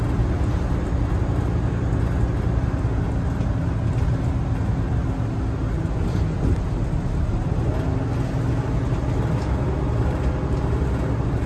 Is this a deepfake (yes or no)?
no